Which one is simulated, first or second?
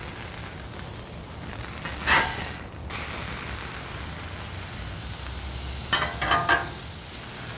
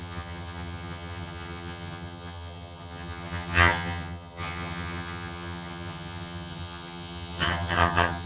second